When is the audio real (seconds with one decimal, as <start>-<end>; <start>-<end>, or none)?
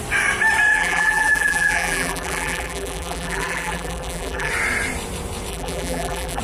0.0-0.7; 4.5-5.5